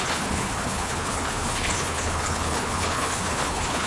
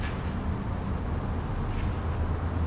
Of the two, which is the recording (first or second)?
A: second